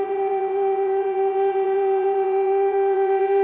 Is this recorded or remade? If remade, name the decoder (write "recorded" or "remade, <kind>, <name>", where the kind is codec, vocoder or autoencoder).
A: remade, vocoder, WaveNeXt